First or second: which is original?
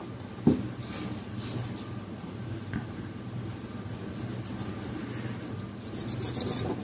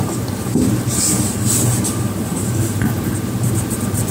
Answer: first